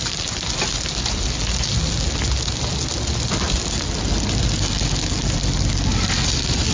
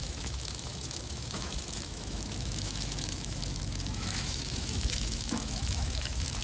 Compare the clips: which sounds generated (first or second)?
second